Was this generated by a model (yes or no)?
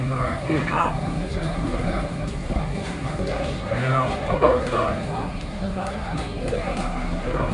yes